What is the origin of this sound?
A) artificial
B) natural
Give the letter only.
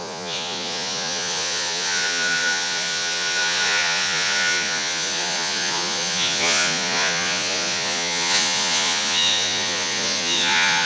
A